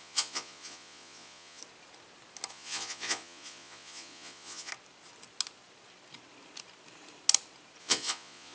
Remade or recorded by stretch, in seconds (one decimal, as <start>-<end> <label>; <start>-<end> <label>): 0.0-1.6 remade; 1.6-2.5 recorded; 2.5-4.7 remade; 4.7-7.8 recorded; 7.8-8.5 remade